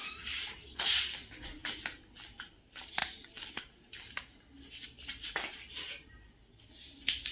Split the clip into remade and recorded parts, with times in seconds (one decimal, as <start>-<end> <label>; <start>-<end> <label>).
0.0-0.8 remade; 0.8-7.3 recorded